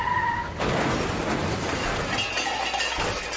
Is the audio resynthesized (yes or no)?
no